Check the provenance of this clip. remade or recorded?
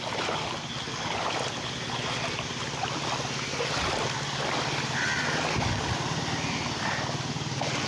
recorded